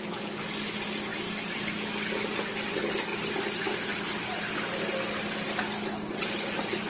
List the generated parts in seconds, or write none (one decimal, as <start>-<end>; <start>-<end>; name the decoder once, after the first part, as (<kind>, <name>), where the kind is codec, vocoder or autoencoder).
none